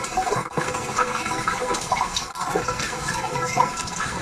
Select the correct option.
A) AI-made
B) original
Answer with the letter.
A